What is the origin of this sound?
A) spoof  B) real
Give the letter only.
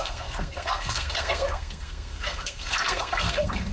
A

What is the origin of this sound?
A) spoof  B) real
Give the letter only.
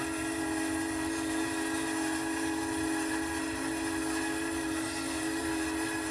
B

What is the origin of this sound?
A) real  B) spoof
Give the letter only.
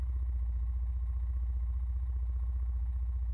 A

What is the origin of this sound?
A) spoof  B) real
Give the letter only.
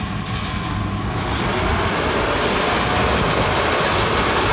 B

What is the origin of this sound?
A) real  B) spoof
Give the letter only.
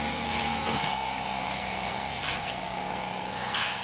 B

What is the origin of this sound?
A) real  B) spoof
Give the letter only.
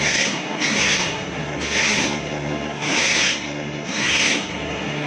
B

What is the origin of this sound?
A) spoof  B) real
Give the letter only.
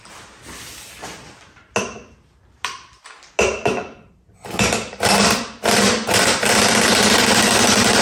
B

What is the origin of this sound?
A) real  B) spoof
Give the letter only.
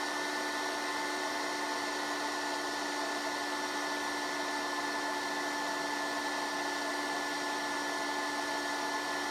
A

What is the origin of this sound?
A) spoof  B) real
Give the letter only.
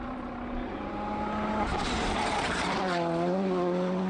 B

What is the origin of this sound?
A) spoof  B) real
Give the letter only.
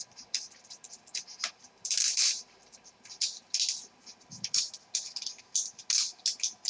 B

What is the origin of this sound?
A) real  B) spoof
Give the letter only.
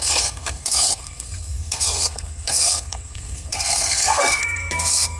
B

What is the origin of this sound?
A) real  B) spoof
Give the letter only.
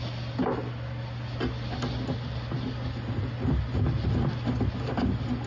A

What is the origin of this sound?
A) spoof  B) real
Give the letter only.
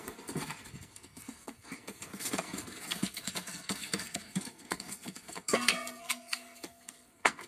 A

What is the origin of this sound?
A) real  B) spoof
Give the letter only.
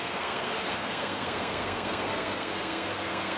B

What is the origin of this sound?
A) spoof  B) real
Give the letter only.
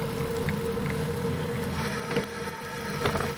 B